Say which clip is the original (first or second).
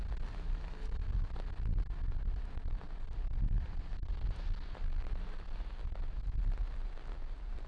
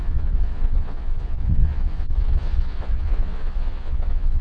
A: first